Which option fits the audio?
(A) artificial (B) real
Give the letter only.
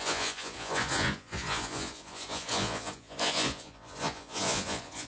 A